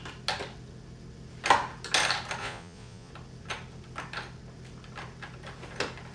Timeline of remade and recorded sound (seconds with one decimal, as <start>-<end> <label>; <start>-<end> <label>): 0.0-2.4 recorded; 2.4-3.1 remade; 3.1-6.1 recorded